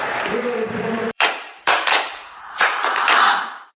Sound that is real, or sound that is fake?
fake